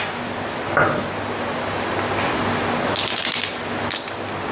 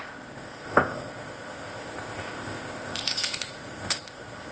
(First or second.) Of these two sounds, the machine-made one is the second